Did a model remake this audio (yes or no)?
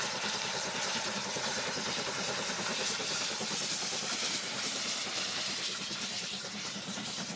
yes